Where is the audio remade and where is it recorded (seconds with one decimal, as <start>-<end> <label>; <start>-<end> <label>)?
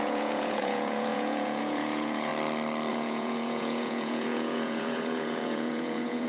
0.0-2.3 remade; 2.3-2.9 recorded; 2.9-6.3 remade